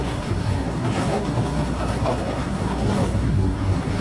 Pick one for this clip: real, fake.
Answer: fake